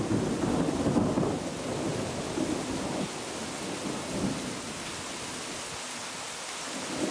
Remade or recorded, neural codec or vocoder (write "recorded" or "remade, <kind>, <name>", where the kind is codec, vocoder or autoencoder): recorded